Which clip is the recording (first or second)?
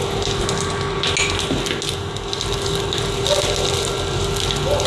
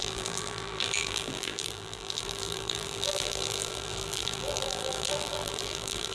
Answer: first